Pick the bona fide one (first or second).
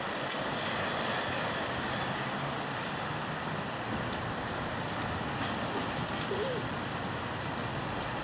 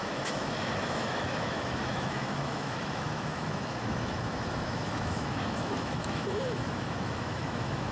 first